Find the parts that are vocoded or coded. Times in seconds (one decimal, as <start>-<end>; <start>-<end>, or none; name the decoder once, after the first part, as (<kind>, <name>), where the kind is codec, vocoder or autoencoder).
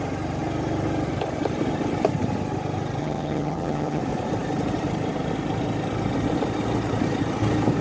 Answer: 3.0-4.0 (vocoder, HiFi-GAN)